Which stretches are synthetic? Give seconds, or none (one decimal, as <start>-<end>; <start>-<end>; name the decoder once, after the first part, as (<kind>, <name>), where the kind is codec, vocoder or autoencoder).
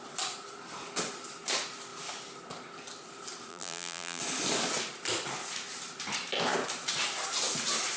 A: 3.5-4.2 (vocoder, BigVGAN v2)